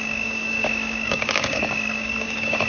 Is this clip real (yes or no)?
no